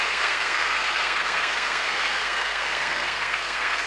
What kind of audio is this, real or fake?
fake